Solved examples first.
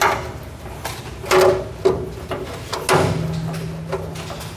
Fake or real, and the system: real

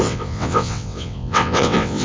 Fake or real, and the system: fake, vocoder, WaveNeXt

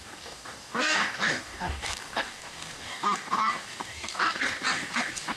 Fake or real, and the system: fake, codec, DAC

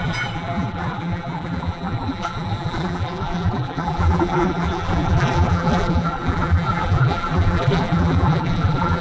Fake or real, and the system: fake, vocoder, BigVGAN v2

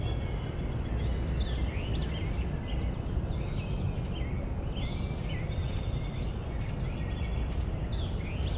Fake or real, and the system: real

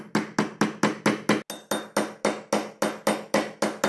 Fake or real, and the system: real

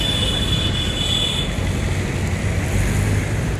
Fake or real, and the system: real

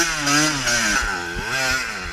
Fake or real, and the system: real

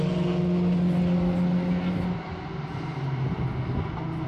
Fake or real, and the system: real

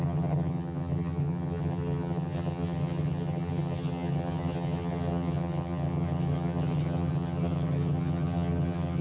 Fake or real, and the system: fake, vocoder, HiFi-GAN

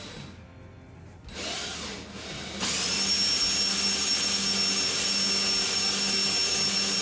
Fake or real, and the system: real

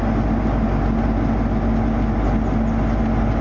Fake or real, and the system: real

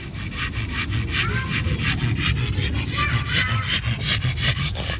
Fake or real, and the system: real